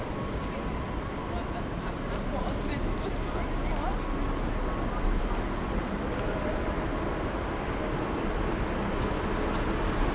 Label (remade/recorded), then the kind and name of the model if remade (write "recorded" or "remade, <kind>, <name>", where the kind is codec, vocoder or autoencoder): recorded